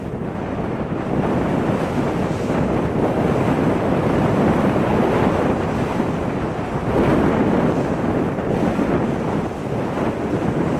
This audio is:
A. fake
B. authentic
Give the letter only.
B